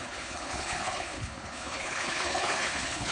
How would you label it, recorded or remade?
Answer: remade